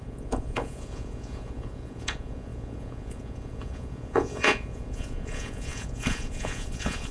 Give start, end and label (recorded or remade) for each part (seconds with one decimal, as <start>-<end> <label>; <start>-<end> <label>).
0.0-7.1 remade